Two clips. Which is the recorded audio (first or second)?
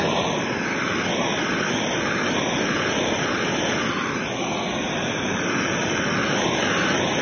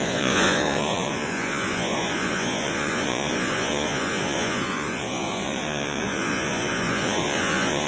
first